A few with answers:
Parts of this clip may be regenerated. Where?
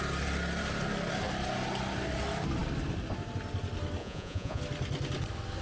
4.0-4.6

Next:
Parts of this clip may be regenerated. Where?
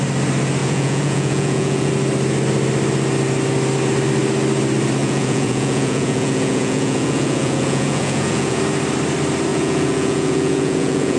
0.6-1.9; 5.0-8.6; 9.5-11.2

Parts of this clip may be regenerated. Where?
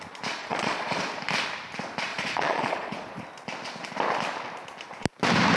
0.4-1.0; 2.1-3.2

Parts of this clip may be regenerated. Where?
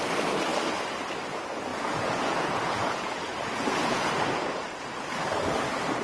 1.7-4.1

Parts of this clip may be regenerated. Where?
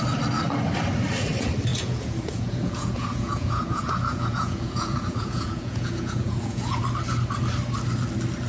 1.7-6.8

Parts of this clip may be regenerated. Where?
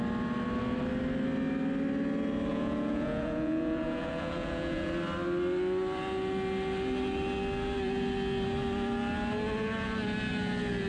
2.5-4.9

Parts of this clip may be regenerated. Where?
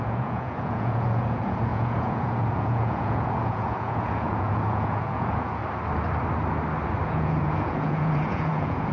0.0-5.6; 7.1-8.9